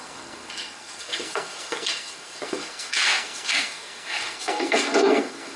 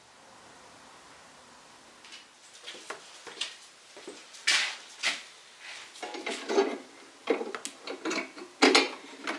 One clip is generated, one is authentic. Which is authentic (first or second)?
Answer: second